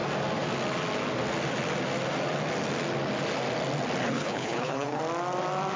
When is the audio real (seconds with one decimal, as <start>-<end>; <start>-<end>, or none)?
0.0-4.0; 5.0-5.8